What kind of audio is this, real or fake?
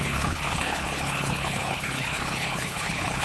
fake